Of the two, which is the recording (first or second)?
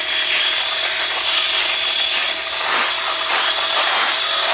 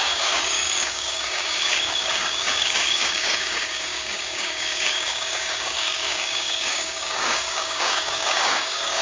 first